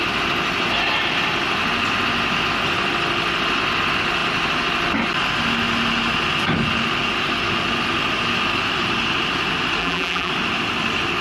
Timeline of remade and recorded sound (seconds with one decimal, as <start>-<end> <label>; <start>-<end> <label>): 0.0-9.8 recorded; 9.8-10.3 remade; 10.3-11.2 recorded